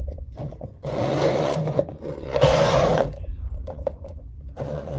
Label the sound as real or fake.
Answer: fake